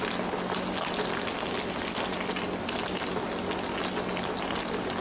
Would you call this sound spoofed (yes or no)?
no